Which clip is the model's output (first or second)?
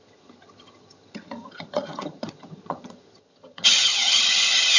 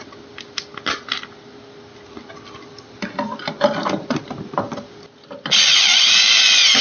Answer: first